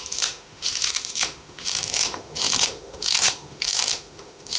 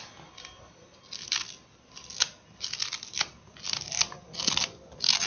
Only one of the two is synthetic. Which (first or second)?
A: first